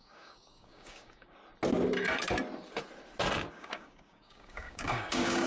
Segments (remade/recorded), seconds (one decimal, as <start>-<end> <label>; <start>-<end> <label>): 0.0-1.4 remade; 1.4-3.5 recorded; 3.5-5.5 remade